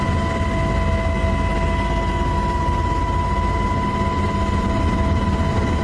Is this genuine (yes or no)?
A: yes